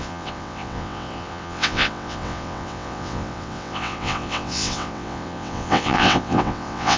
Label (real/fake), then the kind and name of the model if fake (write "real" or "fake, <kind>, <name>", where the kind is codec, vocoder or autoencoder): fake, vocoder, WaveNeXt